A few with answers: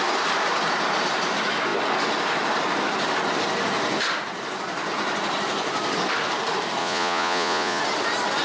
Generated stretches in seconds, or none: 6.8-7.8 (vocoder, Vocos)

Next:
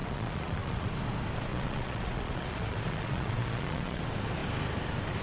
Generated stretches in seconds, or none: 0.0-0.9 (vocoder, Vocos); 1.5-4.0

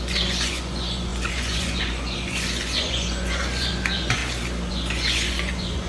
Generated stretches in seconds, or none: 0.0-4.2 (vocoder, Vocos); 4.7-5.9